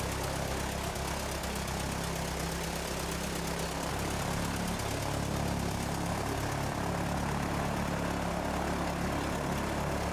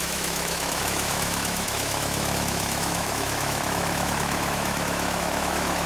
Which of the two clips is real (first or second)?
first